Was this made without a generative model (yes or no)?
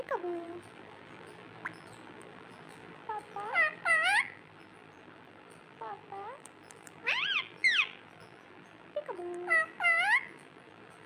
no